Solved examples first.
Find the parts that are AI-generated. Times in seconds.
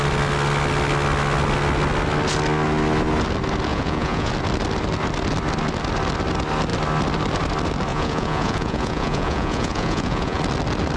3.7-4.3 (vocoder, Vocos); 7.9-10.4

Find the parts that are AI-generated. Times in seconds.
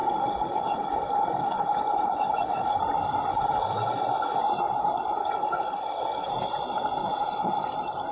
0.0-2.8 (codec, HILCodec); 3.3-4.4; 5.2-6.3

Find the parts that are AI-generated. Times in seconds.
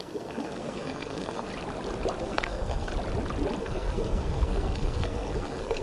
0.0-1.5 (codec, SNAC); 2.2-2.9; 3.6-5.8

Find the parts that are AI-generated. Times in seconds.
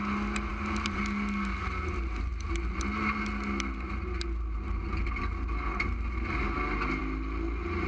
none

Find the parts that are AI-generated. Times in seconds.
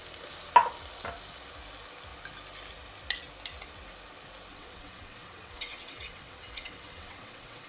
4.5-7.7 (vocoder, WaveNeXt)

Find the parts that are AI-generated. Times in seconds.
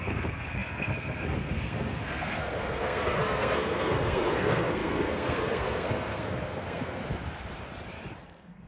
0.0-7.0 (codec, SNAC); 8.2-8.7